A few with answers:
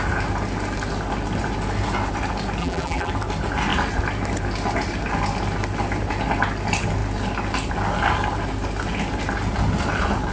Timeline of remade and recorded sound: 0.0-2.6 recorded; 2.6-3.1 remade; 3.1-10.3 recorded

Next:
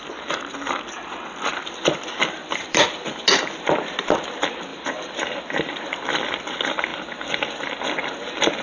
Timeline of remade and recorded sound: 0.0-1.5 recorded; 1.5-3.1 remade; 3.1-4.7 recorded; 4.7-5.4 remade; 5.4-8.6 recorded

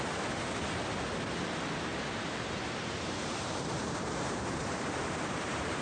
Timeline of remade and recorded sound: 0.0-1.9 recorded; 1.9-5.8 remade

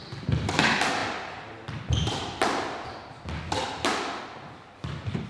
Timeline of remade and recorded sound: 0.0-5.3 recorded